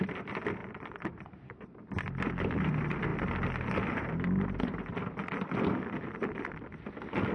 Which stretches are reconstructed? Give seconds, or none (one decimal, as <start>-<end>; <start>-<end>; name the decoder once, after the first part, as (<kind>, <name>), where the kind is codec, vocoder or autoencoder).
0.6-1.6 (vocoder, BigVGAN v2)